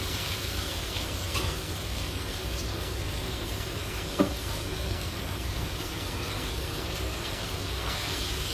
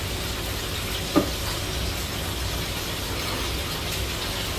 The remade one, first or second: first